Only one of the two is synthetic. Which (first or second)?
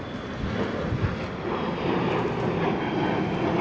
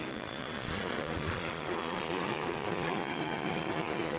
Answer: second